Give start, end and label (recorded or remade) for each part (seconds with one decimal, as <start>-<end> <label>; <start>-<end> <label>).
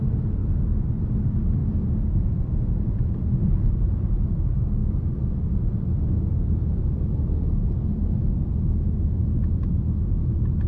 0.0-0.4 remade; 0.4-1.0 recorded; 1.0-1.6 remade; 1.6-2.2 recorded; 2.2-10.7 remade